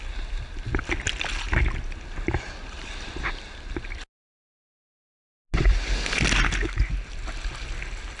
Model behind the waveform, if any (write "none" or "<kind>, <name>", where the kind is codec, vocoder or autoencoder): none